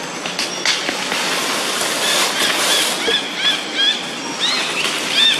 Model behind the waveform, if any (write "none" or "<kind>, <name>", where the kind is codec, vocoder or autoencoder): none